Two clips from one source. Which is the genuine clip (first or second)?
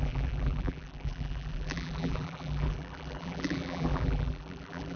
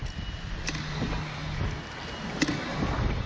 second